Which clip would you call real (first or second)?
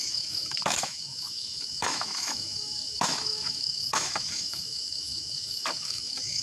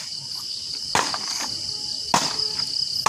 second